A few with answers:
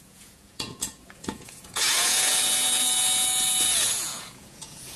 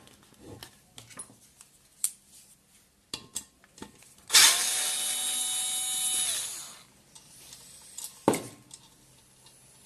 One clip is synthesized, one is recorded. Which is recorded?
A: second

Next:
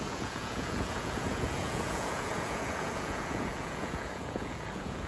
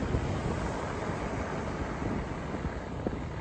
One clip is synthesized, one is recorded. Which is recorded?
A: second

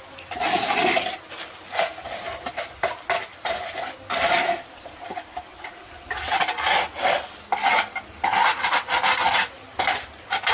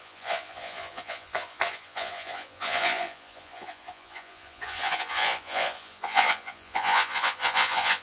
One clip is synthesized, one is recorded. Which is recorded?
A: first